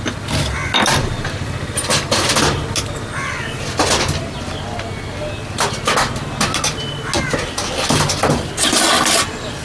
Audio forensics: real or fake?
real